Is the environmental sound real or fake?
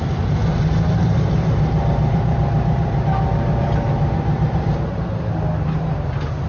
fake